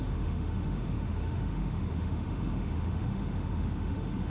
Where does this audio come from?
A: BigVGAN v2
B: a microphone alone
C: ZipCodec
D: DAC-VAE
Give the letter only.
D